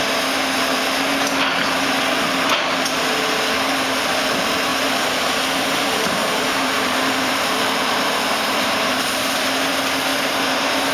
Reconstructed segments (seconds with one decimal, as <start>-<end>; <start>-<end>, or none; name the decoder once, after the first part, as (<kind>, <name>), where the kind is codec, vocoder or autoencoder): 4.7-9.1 (vocoder, BigVGAN v2); 10.1-10.9